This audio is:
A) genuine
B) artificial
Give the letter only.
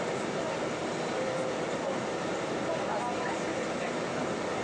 A